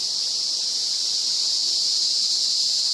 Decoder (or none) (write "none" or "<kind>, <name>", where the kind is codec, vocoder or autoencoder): none